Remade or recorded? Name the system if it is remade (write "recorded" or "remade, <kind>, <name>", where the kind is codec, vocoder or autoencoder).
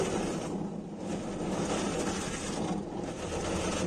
recorded